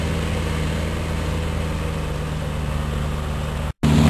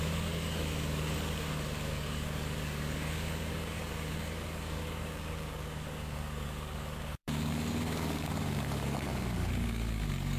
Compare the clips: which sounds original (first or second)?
first